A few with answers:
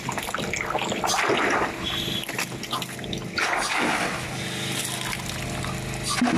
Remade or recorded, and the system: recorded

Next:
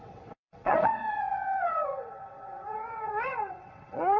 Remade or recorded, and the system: remade, vocoder, WaveNeXt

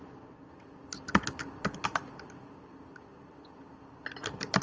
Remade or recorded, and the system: recorded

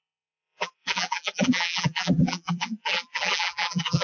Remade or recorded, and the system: remade, vocoder, BigVGAN v2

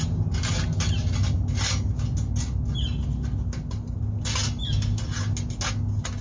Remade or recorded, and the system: recorded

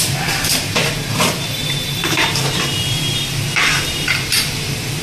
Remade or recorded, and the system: remade, vocoder, BigVGAN v2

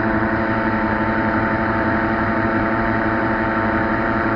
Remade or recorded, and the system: remade, vocoder, BigVGAN v2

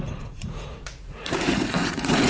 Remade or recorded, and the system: remade, vocoder, Vocos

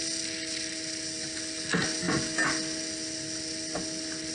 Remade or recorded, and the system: recorded